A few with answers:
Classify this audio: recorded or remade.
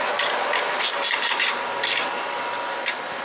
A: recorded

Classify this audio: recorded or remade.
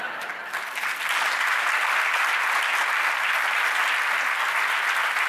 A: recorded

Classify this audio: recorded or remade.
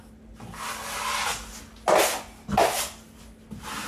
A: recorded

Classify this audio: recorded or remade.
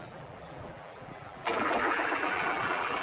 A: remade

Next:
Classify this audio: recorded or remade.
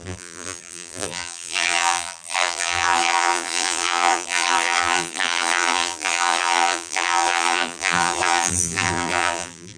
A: remade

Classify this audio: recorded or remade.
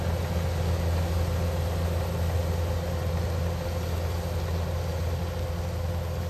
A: recorded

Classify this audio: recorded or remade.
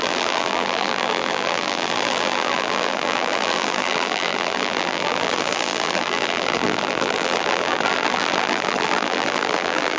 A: remade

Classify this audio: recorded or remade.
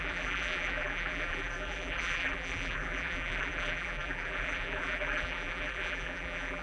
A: remade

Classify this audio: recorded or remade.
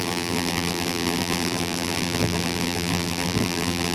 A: remade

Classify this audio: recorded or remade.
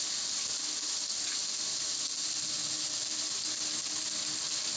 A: recorded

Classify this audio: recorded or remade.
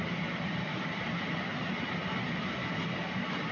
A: remade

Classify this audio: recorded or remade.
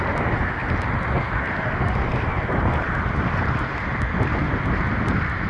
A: recorded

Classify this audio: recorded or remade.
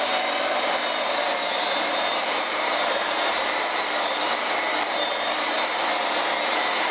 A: remade